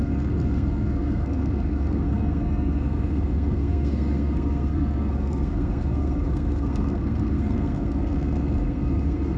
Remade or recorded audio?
remade